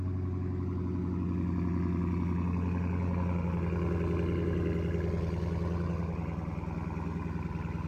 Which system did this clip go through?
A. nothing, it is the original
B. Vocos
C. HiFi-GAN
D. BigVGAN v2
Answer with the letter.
A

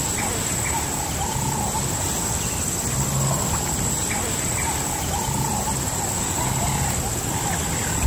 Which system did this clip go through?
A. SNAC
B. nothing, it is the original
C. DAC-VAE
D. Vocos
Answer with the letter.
B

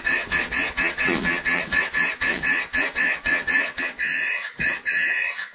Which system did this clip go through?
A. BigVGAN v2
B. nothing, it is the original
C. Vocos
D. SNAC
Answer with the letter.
C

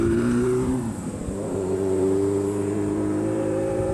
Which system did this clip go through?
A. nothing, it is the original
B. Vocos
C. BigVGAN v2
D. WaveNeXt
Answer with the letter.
C